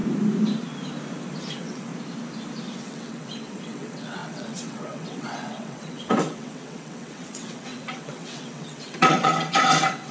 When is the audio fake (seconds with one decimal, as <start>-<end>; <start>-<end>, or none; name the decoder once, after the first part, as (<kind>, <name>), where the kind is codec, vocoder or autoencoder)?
1.5-1.9 (vocoder, WaveNeXt); 2.8-10.1